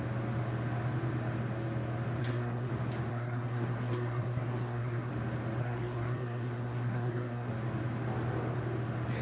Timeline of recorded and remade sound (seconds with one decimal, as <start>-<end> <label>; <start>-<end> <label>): 0.0-2.2 recorded; 2.2-2.7 remade; 2.7-3.1 recorded; 3.1-5.1 remade; 5.1-5.6 recorded; 5.6-7.5 remade; 7.5-9.2 recorded